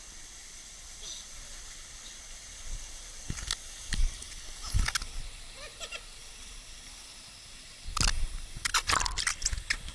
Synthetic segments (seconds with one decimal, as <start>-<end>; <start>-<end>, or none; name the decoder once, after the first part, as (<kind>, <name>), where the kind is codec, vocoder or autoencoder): 0.4-1.4 (vocoder, BigVGAN v2); 5.7-6.3